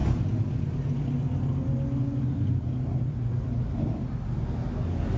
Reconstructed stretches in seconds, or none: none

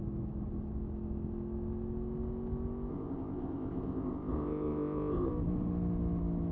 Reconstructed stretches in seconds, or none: 2.9-5.3 (codec, ZipCodec)

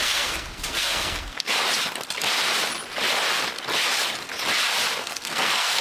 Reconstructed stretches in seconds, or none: 0.0-1.5 (codec, SNAC); 5.0-5.8

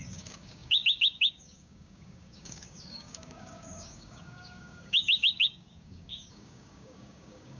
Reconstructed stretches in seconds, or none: 0.0-7.6 (codec, DAC)

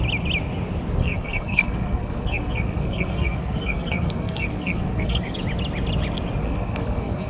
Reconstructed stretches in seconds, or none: 1.0-5.4 (codec, SNAC); 6.4-7.3

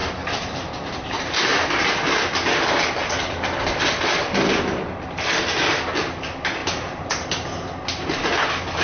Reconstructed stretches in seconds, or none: 0.0-1.8 (vocoder, BigVGAN v2); 6.6-7.3

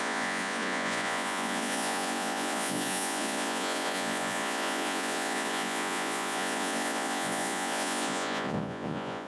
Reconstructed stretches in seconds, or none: 0.0-9.3 (vocoder, Vocos)